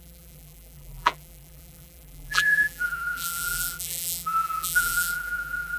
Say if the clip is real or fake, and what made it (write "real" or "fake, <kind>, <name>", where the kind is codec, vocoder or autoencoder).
fake, vocoder, BigVGAN v2